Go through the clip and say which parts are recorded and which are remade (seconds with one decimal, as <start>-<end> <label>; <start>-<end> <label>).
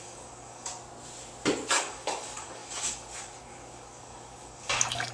0.0-0.7 remade; 0.7-1.7 recorded; 1.7-5.1 remade